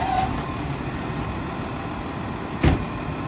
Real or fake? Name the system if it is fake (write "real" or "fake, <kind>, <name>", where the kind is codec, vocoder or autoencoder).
real